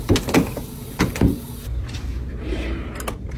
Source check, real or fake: real